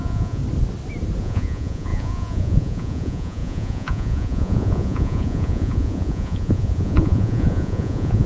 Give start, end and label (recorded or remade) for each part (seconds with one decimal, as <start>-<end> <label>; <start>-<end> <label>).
0.0-0.4 remade; 0.4-1.2 recorded; 1.2-8.3 remade